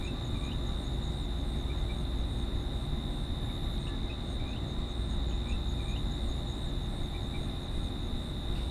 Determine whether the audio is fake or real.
real